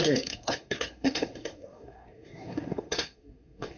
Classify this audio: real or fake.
fake